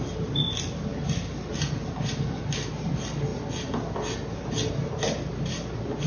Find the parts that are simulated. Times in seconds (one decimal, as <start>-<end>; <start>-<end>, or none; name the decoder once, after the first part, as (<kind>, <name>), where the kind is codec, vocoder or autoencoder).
none